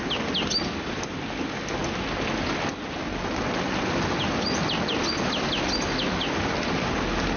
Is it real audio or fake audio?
real